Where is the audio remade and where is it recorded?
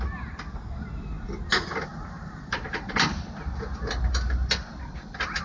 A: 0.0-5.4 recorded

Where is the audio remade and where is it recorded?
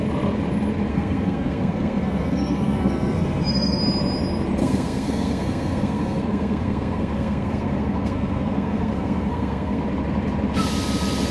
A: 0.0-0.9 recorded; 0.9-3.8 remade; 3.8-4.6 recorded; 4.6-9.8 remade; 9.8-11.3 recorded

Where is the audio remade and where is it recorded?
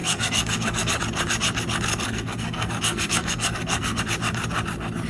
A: 0.0-1.0 remade; 1.0-1.9 recorded; 1.9-4.0 remade; 4.0-5.1 recorded